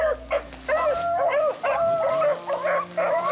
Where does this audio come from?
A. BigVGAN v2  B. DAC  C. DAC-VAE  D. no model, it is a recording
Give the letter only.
D